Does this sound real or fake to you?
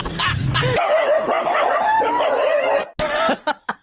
real